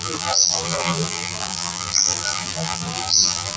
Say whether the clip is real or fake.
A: fake